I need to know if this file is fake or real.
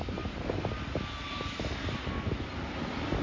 real